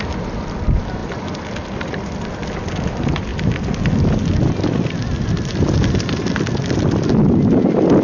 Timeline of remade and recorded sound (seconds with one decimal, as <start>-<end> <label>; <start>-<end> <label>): 0.0-8.0 recorded